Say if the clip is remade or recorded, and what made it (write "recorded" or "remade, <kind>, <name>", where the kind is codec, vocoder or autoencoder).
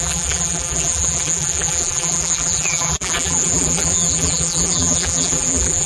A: remade, vocoder, BigVGAN v2